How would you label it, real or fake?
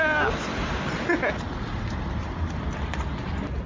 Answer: real